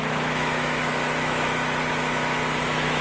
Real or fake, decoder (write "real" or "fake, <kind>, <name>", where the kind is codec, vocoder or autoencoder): fake, autoencoder, DAC-VAE